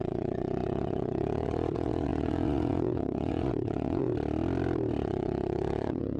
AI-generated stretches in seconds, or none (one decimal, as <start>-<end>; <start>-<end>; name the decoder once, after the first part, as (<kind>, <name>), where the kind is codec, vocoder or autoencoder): 0.0-4.1 (vocoder, WaveNeXt); 5.0-6.2